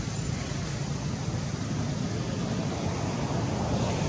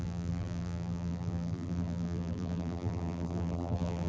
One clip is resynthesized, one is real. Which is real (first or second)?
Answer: first